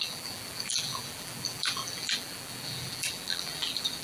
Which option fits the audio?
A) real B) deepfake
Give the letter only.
B